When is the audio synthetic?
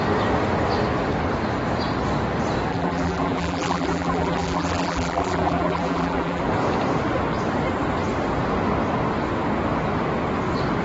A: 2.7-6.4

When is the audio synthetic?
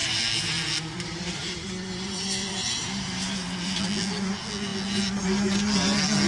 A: 0.0-3.8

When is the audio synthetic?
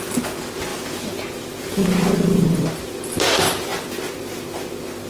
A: none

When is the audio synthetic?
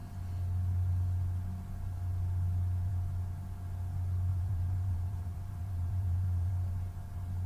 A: 4.3-6.5